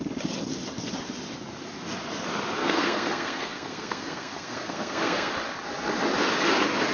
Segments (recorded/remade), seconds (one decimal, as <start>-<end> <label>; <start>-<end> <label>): 0.0-2.6 recorded; 2.6-5.3 remade; 5.3-6.9 recorded